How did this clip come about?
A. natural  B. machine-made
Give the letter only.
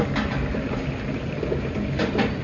A